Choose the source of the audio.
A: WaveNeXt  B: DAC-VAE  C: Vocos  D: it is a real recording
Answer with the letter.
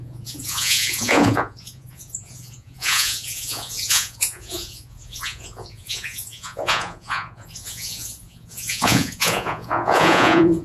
C